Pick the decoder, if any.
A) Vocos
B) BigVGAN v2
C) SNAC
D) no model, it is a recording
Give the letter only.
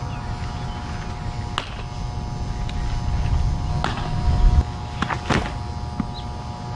D